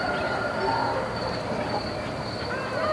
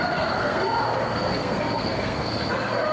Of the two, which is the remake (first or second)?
second